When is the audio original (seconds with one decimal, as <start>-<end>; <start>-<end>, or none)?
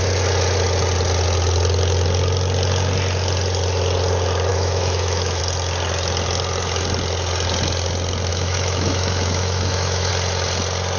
0.0-4.5; 5.4-8.3; 10.1-11.0